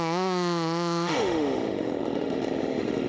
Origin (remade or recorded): remade